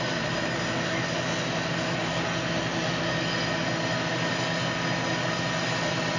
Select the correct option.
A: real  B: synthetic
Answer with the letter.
A